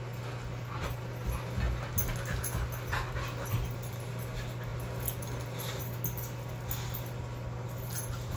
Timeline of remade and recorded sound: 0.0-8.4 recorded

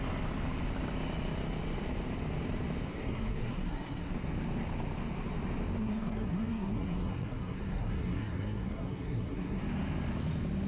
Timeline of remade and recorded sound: 0.0-2.9 recorded; 2.9-4.1 remade; 4.1-5.8 recorded; 5.8-9.6 remade; 9.6-10.7 recorded

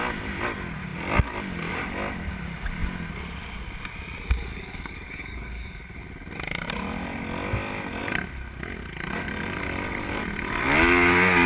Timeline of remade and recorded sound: 0.0-4.5 recorded; 4.5-6.0 remade; 6.0-11.5 recorded